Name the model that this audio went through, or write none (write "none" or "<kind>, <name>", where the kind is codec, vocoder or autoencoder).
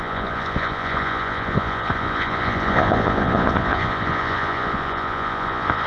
vocoder, Vocos